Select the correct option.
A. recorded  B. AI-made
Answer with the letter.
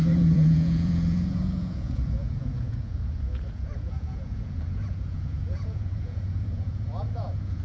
B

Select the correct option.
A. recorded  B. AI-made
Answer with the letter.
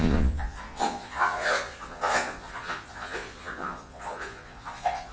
B